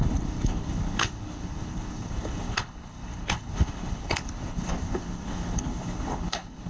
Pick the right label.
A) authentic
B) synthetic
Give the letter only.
B